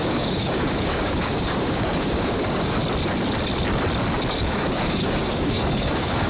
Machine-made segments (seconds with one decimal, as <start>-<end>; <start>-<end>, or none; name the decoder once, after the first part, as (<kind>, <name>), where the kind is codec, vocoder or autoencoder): 0.0-2.8 (codec, DAC); 4.5-6.3